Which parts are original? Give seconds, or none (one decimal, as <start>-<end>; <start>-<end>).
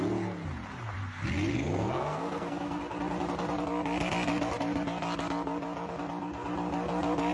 0.0-1.5; 2.8-7.3